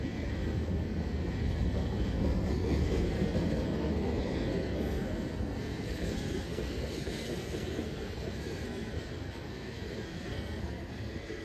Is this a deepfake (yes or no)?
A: yes